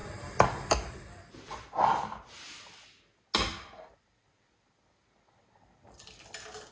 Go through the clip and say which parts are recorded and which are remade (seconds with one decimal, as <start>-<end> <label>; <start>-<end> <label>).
0.0-6.7 recorded